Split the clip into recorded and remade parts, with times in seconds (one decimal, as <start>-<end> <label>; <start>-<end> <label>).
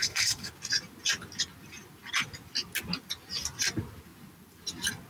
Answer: 0.0-0.5 remade; 0.5-5.1 recorded